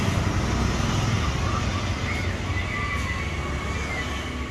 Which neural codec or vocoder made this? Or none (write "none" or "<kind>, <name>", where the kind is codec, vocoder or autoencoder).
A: none